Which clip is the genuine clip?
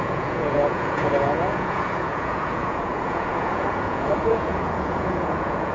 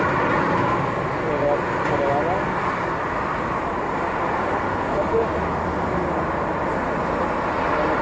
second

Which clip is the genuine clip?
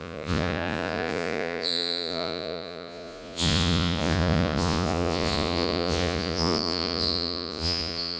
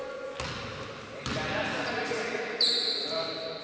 second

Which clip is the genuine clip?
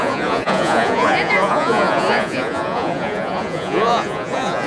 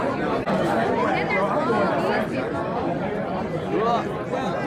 second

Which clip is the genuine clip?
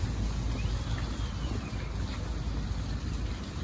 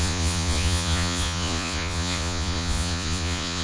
first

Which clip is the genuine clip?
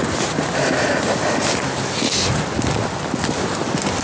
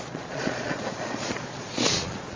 first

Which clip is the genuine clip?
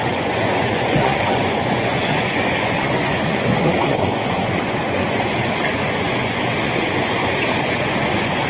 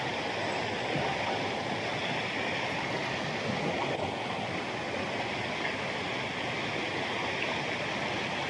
second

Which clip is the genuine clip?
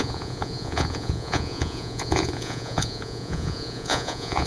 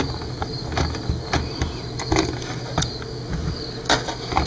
second